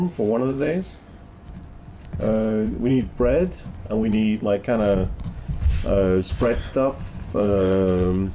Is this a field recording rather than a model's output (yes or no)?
no